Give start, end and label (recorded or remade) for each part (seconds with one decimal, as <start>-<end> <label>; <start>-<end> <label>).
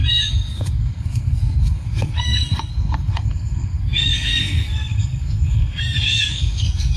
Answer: 0.0-7.0 remade